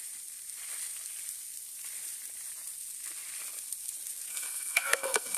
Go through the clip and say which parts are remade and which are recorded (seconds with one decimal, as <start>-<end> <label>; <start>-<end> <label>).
0.0-4.3 recorded; 4.3-5.4 remade